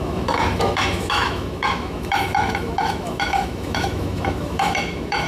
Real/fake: fake